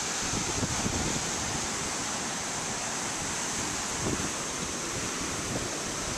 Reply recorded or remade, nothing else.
recorded